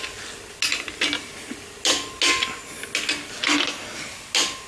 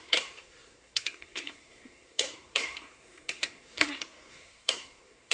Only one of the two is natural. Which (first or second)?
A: first